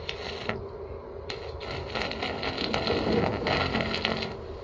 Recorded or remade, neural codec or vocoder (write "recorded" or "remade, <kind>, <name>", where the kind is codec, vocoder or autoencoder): recorded